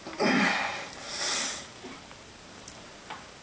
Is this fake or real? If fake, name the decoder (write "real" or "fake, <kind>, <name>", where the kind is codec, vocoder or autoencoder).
real